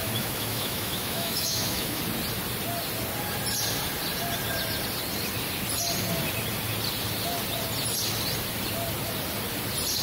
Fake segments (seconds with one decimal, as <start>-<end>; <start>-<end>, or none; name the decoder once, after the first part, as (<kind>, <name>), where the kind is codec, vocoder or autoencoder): 0.0-2.0 (autoencoder, DAC-VAE)